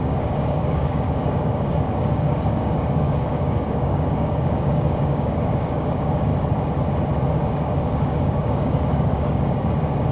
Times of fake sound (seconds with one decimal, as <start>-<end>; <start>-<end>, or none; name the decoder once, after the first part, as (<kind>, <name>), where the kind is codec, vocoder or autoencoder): 0.0-6.3 (codec, DAC); 7.4-10.1

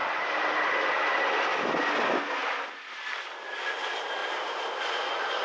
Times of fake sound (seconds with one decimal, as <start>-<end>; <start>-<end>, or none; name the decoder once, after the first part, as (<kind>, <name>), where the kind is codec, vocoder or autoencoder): none

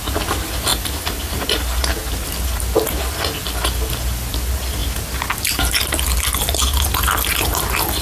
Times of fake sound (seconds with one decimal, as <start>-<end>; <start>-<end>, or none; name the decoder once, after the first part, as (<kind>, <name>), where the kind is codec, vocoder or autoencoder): none

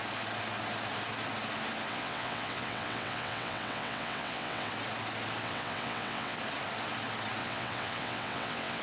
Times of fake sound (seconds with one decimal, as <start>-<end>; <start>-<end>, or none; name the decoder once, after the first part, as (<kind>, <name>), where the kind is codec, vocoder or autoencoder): 1.9-4.7 (vocoder, WaveNeXt); 5.4-6.4; 7.4-8.8

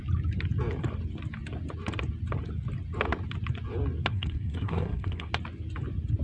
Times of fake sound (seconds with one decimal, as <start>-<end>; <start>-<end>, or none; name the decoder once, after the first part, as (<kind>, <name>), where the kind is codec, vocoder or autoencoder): 4.1-5.3 (codec, SNAC)

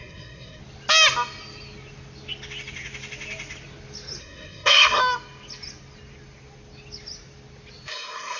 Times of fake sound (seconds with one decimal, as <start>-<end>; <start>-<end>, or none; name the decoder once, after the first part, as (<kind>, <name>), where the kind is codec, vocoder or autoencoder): 0.0-0.6 (codec, SNAC); 4.2-5.0; 7.9-8.4

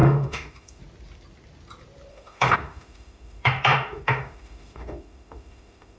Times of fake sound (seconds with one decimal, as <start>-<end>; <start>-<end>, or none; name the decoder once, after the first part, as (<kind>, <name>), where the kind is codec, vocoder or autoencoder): 0.0-0.8 (autoencoder, DAC-VAE); 2.1-6.0